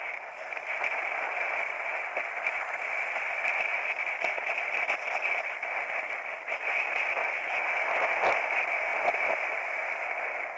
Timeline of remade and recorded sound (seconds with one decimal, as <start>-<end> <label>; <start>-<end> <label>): 0.0-10.6 recorded